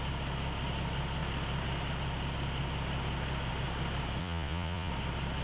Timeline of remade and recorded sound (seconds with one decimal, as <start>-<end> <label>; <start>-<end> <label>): 0.0-4.2 recorded; 4.2-4.9 remade; 4.9-5.4 recorded